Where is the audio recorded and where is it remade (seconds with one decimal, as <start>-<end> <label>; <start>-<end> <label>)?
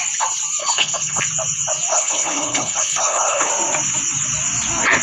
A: 0.0-0.6 recorded; 0.6-1.2 remade; 1.2-1.9 recorded; 1.9-3.5 remade; 3.5-5.0 recorded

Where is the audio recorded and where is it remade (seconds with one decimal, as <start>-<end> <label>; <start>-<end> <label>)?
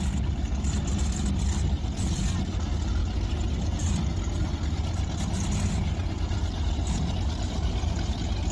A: 0.0-8.5 recorded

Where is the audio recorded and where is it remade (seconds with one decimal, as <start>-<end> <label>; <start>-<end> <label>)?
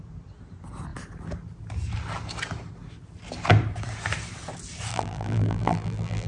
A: 0.0-4.9 recorded; 4.9-6.3 remade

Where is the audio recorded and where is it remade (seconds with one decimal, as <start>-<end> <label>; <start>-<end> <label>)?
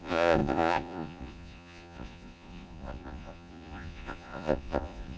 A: 0.0-5.2 remade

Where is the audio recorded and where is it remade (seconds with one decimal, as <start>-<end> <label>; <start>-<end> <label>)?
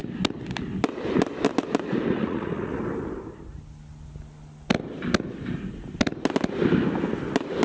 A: 0.0-2.2 recorded; 2.2-2.8 remade; 2.8-7.6 recorded